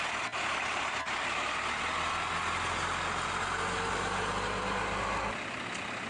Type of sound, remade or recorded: recorded